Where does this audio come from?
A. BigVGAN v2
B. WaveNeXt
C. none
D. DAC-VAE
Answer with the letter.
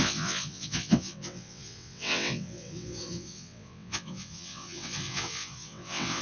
B